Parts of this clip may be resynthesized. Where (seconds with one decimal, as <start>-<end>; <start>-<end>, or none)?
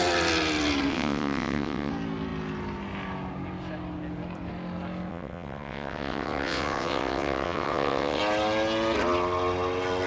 0.9-1.9; 5.1-8.2